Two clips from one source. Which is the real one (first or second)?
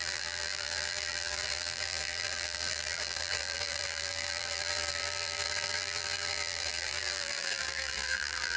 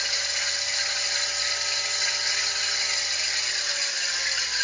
second